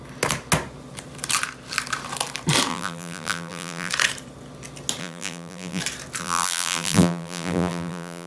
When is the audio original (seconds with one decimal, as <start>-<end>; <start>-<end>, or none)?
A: 0.0-2.7; 3.9-5.0; 5.8-6.2